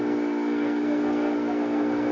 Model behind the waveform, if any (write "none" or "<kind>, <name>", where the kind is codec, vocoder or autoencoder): codec, SNAC